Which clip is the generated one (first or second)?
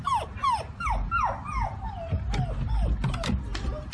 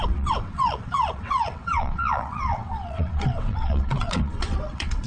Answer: second